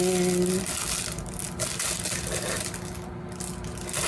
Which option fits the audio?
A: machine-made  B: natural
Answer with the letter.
B